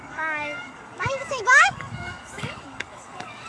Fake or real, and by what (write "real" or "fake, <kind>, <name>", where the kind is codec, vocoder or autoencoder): fake, codec, DAC